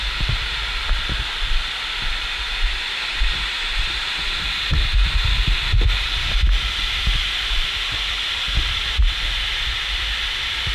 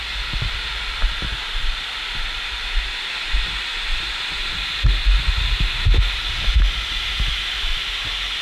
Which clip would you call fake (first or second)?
first